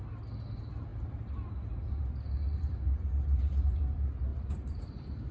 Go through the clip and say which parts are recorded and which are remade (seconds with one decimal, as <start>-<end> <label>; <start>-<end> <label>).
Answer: 0.0-4.3 recorded; 4.3-4.8 remade; 4.8-5.3 recorded